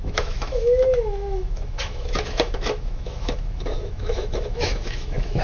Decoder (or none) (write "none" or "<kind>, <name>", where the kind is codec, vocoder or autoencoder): autoencoder, DAC-VAE